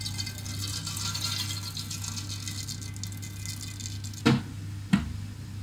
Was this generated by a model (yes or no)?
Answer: no